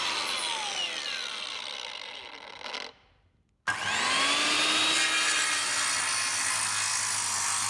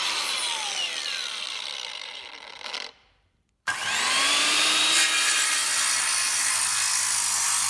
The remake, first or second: second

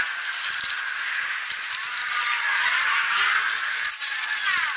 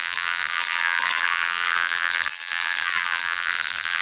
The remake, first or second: second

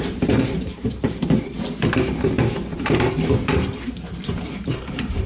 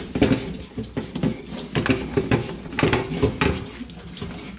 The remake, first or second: first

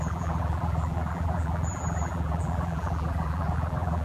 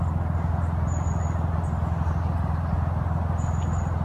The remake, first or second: first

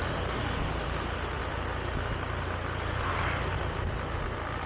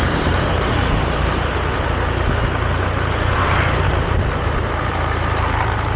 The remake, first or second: second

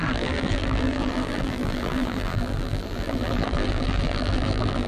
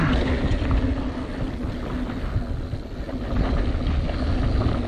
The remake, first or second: first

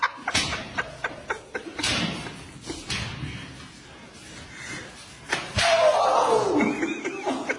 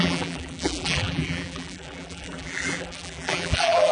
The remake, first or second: second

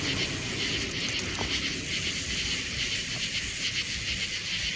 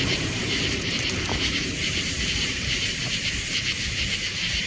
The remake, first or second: second